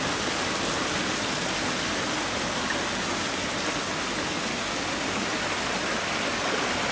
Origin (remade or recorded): recorded